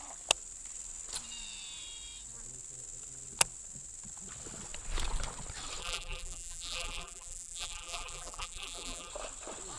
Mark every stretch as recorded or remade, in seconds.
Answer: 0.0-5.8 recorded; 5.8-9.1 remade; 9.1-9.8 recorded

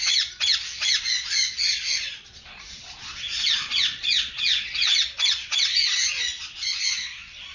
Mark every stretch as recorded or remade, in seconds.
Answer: 0.0-7.5 remade

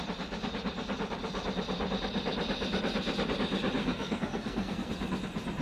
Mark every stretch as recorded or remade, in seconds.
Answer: 0.0-3.8 recorded; 3.8-4.9 remade; 4.9-5.6 recorded

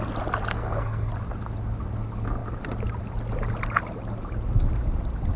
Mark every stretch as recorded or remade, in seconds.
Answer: 0.0-0.5 recorded; 0.5-1.1 remade; 1.1-5.4 recorded